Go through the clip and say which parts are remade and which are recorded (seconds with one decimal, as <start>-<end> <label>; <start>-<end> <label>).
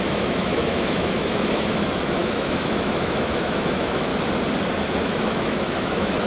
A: 0.0-4.1 remade; 4.1-5.0 recorded; 5.0-6.3 remade